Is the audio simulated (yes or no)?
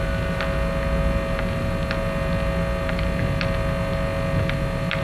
no